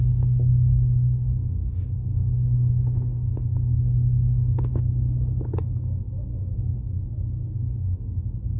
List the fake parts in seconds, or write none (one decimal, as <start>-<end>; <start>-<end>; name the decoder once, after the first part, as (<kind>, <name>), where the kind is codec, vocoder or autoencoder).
0.0-4.8 (autoencoder, DAC-VAE); 6.3-7.0; 7.6-8.2